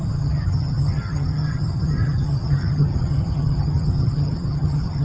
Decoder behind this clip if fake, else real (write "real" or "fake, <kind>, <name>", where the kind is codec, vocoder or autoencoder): fake, vocoder, HiFi-GAN